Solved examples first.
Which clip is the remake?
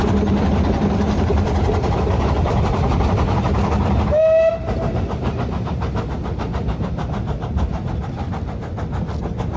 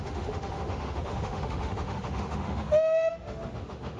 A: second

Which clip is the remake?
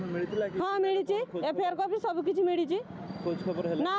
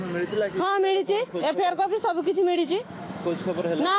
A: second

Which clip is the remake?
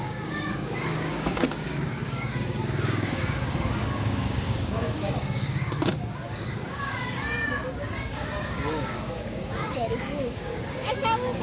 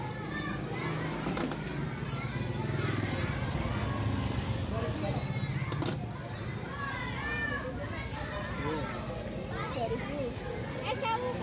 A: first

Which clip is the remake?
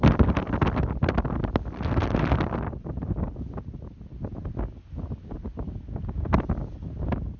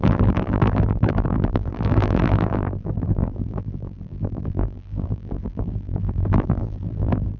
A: second